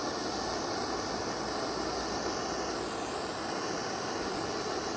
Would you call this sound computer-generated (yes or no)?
no